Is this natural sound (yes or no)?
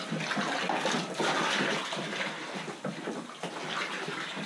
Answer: yes